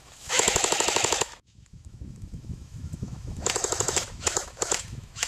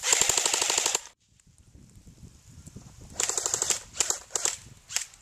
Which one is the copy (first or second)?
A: first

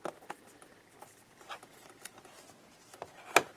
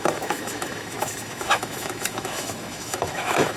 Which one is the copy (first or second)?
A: second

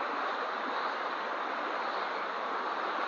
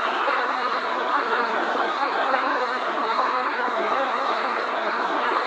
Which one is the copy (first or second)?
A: second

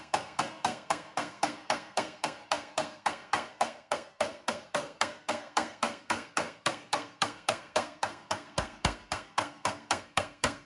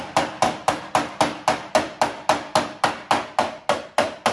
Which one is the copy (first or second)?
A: first